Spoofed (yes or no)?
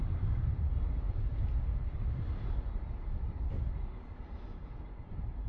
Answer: no